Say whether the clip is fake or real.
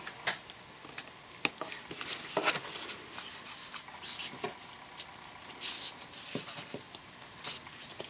real